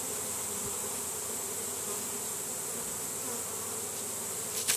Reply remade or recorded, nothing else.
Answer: remade